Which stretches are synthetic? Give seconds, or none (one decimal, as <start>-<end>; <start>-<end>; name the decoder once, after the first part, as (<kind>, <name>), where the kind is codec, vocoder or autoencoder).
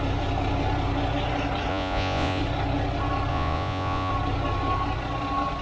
1.7-2.4 (vocoder, Vocos); 3.3-4.1